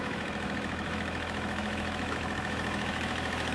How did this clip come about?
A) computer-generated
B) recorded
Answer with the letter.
A